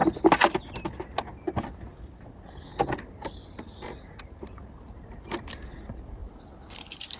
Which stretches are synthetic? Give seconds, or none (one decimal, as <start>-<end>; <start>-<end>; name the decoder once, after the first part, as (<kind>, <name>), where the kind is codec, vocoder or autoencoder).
4.2-6.2 (vocoder, BigVGAN v2); 6.8-7.2